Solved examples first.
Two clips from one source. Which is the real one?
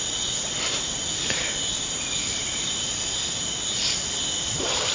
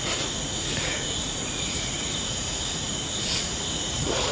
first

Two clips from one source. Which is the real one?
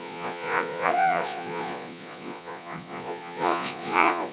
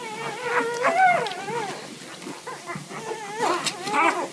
second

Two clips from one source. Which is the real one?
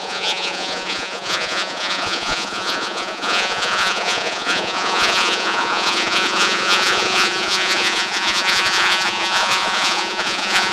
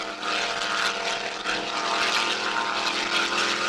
second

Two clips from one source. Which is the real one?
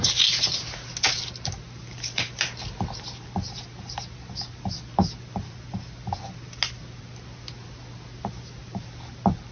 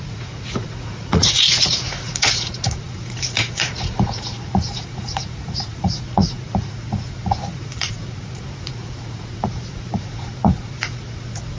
first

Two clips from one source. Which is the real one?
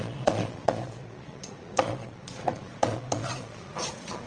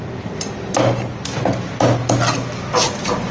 second